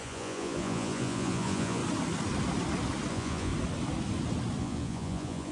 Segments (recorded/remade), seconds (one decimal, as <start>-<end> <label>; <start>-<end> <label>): 0.0-1.8 remade; 1.8-3.1 recorded; 3.1-3.5 remade; 3.5-4.6 recorded; 4.6-5.5 remade